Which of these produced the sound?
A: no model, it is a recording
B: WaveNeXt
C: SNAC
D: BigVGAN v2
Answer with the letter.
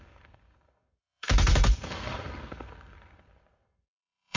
C